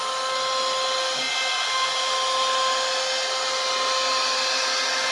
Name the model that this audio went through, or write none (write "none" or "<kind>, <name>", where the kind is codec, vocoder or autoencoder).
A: none